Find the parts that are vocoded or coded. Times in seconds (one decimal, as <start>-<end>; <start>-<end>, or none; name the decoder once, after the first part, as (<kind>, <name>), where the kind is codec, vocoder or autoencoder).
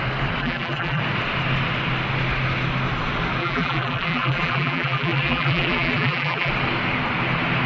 0.4-1.0 (vocoder, BigVGAN v2); 3.4-6.5